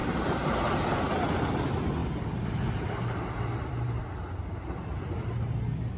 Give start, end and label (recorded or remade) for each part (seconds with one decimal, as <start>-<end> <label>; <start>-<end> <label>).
0.0-1.0 remade; 1.0-2.0 recorded; 2.0-4.0 remade; 4.0-6.0 recorded